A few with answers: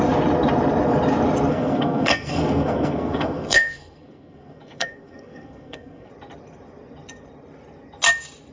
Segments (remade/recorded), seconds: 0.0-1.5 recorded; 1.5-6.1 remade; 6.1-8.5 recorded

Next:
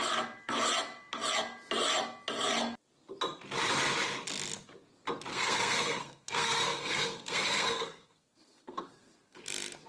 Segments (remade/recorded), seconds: 0.0-5.3 recorded; 5.3-9.4 remade; 9.4-9.9 recorded

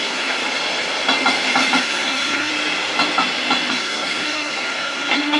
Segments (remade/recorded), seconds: 0.0-0.4 remade; 0.4-1.8 recorded; 1.8-2.5 remade; 2.5-3.7 recorded; 3.7-5.4 remade

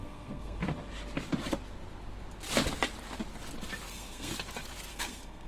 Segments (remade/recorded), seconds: 0.0-0.6 remade; 0.6-3.9 recorded; 3.9-4.3 remade; 4.3-4.9 recorded; 4.9-5.5 remade

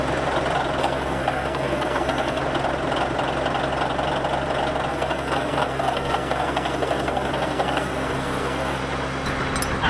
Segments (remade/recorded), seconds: 0.0-0.8 recorded; 0.8-2.4 remade; 2.4-4.9 recorded; 4.9-8.8 remade; 8.8-9.9 recorded